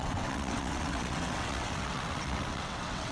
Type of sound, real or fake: fake